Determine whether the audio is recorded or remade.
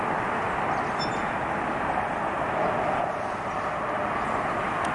recorded